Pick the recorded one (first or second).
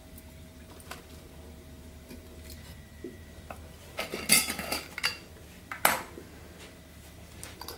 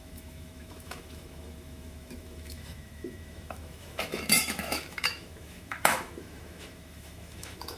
first